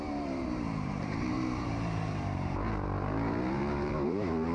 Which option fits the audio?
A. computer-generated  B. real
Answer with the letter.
A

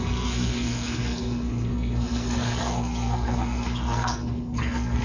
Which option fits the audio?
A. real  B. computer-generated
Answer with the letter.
B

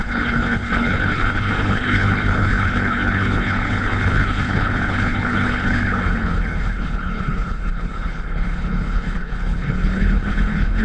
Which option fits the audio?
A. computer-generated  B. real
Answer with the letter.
A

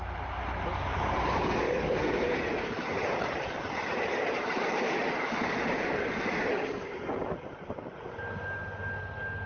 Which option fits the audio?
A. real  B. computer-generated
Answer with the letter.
A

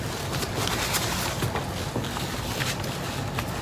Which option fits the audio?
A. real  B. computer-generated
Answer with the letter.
A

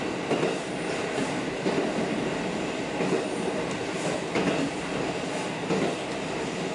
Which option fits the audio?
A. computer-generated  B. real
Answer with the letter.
B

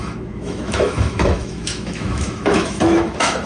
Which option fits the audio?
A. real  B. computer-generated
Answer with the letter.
B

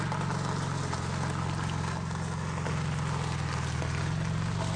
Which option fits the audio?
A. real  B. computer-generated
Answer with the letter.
A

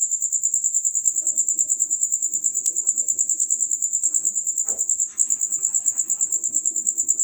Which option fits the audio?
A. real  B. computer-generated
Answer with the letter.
B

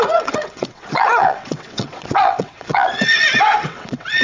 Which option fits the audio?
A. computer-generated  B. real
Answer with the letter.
A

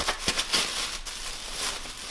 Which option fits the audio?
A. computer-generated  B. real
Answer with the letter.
B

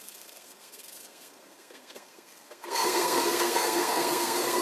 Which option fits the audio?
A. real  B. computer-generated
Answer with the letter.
B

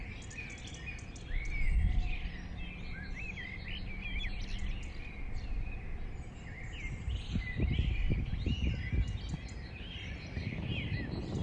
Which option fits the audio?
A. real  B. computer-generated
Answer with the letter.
A